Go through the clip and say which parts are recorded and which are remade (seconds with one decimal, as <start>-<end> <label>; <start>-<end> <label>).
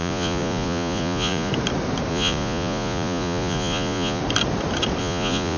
0.0-1.5 remade; 1.5-2.1 recorded; 2.1-4.2 remade; 4.2-5.0 recorded; 5.0-5.6 remade